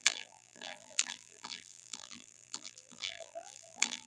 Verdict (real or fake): fake